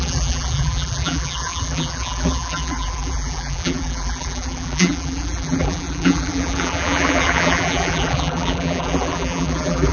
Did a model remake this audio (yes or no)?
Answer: yes